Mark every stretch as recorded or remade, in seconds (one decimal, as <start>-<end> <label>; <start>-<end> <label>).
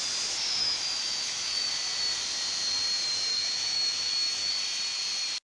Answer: 0.0-0.6 recorded; 0.6-1.7 remade; 1.7-3.3 recorded; 3.3-4.5 remade; 4.5-5.4 recorded